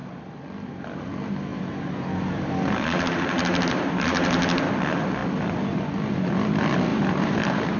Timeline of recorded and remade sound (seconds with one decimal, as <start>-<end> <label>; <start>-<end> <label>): 0.0-1.5 recorded; 1.5-4.6 remade; 4.6-6.9 recorded; 6.9-7.8 remade